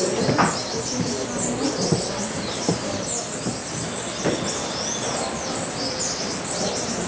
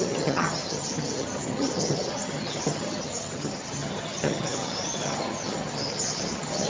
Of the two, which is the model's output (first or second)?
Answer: second